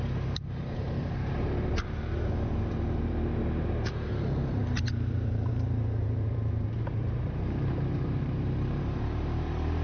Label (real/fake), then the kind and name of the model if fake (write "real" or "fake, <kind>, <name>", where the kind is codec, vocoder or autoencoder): fake, vocoder, BigVGAN v2